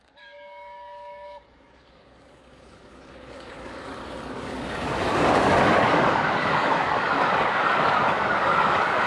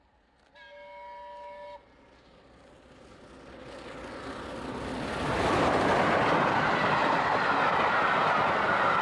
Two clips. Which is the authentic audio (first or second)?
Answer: second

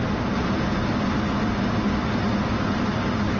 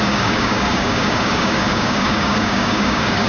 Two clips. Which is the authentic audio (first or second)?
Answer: first